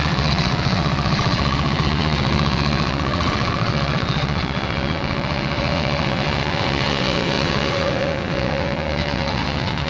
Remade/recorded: remade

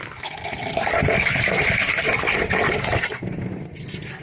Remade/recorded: recorded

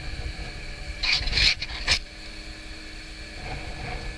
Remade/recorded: recorded